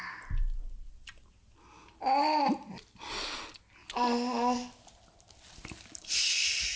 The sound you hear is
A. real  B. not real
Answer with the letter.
A